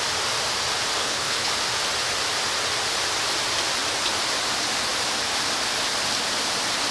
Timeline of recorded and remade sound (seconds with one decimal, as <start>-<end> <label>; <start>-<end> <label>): 0.0-1.0 recorded; 1.0-1.5 remade; 1.5-6.9 recorded